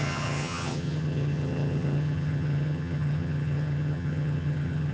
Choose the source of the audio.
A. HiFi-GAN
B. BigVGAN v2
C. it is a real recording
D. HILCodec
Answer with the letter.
A